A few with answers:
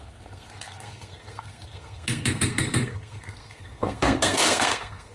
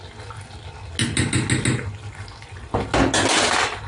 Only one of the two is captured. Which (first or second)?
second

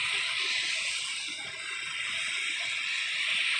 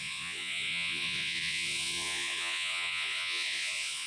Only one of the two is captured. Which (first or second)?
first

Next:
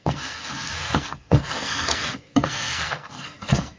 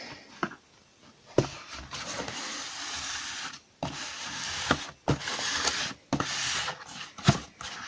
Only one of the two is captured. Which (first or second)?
second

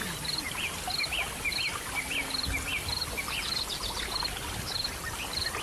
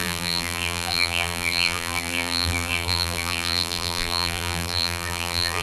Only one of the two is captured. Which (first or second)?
first